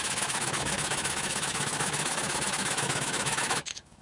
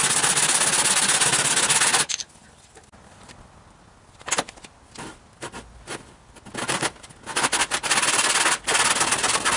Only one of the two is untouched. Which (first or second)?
second